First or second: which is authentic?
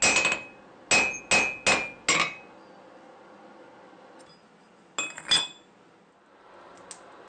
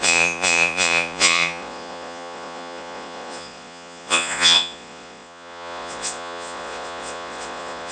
first